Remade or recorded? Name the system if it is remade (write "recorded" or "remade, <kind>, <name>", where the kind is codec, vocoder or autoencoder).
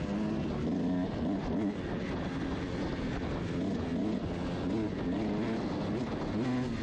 recorded